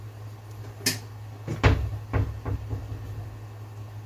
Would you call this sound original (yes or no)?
yes